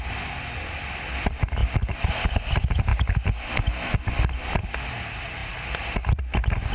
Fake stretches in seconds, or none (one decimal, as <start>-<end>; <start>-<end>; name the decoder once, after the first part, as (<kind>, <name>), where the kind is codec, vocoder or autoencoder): 5.4-6.7 (vocoder, BigVGAN v2)